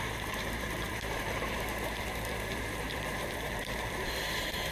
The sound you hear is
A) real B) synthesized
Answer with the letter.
B